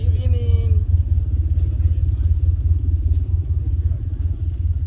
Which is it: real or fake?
real